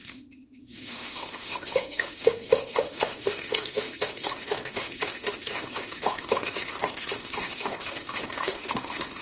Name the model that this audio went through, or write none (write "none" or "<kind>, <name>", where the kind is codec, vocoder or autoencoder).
autoencoder, DAC-VAE